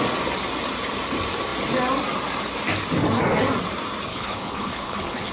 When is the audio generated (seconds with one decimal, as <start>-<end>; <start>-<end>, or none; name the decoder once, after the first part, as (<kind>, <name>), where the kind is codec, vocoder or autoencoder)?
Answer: 4.1-5.3 (codec, HILCodec)